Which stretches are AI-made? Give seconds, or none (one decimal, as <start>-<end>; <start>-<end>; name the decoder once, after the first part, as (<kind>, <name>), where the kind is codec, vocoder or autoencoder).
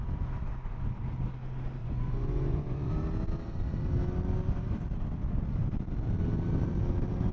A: 1.8-2.9 (vocoder, Vocos)